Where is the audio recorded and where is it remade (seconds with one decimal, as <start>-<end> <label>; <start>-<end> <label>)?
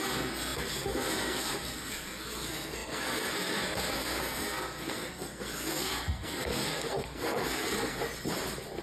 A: 0.0-8.0 remade; 8.0-8.8 recorded